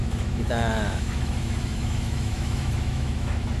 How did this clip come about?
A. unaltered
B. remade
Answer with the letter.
B